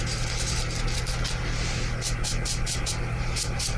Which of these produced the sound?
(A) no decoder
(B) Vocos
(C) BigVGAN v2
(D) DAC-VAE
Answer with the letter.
A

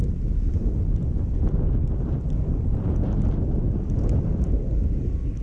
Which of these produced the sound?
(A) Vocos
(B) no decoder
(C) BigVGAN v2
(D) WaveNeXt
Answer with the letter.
B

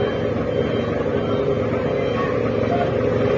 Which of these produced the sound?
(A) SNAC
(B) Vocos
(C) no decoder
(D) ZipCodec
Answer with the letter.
C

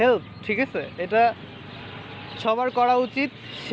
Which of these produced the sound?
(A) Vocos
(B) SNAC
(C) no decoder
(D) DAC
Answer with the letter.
C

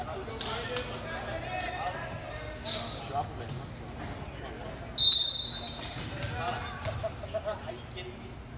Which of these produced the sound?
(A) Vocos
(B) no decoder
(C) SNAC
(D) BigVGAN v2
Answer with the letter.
B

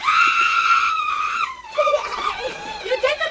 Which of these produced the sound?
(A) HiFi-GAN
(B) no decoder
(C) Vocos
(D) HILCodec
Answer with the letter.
C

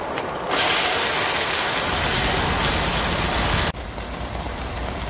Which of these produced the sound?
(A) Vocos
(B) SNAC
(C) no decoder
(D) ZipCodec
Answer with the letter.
C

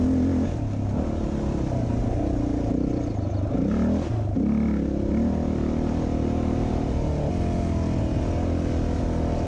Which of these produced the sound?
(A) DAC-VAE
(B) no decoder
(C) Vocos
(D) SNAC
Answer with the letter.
B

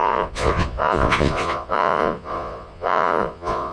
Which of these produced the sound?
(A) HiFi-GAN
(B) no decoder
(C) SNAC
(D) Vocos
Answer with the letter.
D